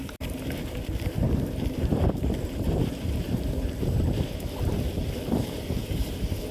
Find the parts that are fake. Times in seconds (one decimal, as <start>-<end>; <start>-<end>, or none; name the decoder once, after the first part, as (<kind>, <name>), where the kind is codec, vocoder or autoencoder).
0.0-6.5 (vocoder, BigVGAN v2)